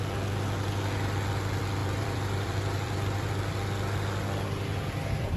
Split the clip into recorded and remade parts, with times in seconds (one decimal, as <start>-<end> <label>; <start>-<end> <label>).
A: 0.0-1.8 recorded; 1.8-3.3 remade; 3.3-5.4 recorded